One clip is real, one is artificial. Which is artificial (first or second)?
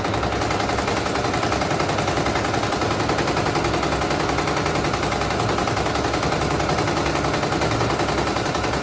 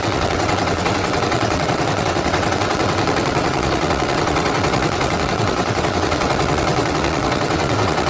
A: second